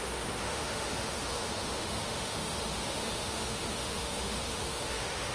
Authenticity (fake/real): fake